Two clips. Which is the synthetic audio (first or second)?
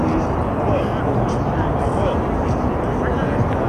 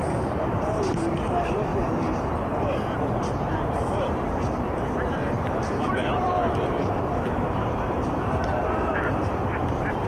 second